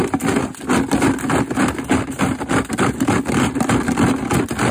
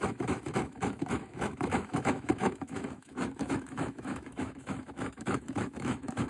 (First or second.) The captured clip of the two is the first